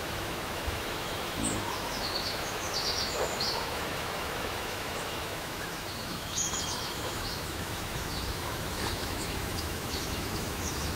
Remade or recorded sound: remade